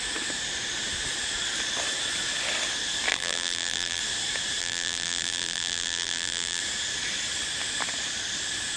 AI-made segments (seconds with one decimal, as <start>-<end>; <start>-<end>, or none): 3.1-4.0; 4.6-6.6

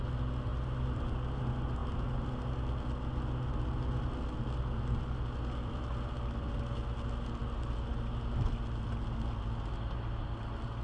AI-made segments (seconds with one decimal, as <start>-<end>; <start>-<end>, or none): 1.8-2.3; 5.6-6.6